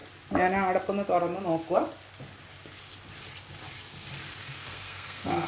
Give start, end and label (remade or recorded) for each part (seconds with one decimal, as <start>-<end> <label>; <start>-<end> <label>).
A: 0.0-4.4 recorded; 4.4-5.5 remade